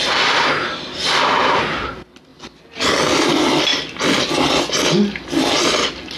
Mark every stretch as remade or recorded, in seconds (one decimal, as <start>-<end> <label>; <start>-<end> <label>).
0.0-6.2 recorded